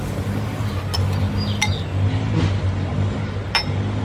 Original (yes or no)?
yes